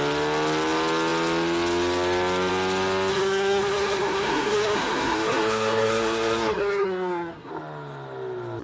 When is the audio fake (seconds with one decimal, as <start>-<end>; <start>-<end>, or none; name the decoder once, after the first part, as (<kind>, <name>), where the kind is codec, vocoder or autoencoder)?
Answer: 3.1-7.5 (codec, SNAC)